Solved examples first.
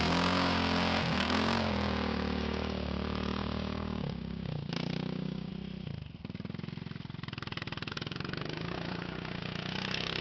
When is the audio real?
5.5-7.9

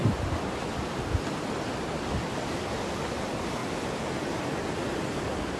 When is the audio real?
0.0-5.6

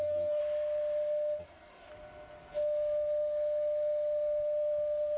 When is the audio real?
0.4-1.4; 1.9-5.2